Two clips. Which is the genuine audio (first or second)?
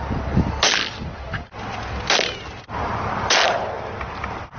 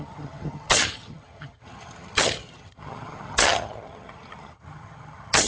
first